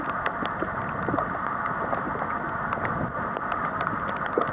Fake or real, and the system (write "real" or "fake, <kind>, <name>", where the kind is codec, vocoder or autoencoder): real